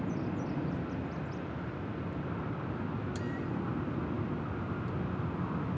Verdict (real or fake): real